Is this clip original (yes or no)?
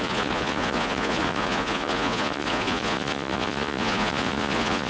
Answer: no